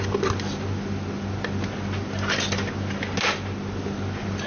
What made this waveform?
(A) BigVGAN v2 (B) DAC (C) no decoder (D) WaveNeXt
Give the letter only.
C